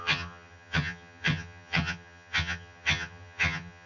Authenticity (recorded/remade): remade